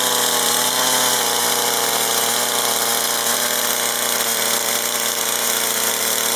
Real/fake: real